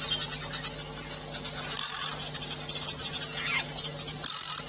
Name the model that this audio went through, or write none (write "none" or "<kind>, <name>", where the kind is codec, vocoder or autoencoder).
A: none